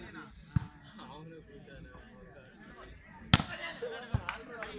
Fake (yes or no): no